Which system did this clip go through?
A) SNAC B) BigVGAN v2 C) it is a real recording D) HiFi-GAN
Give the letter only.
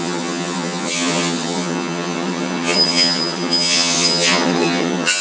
D